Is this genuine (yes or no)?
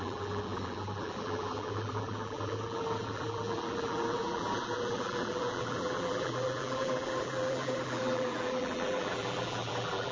no